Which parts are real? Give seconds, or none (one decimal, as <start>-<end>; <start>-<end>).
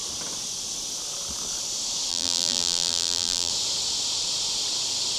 0.0-2.1; 3.5-5.2